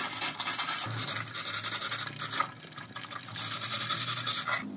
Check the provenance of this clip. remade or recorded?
recorded